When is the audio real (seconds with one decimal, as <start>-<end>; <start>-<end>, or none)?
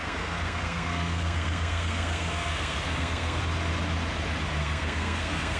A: 3.4-4.6